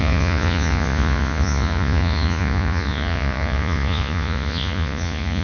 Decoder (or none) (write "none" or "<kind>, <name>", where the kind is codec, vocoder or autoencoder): vocoder, Vocos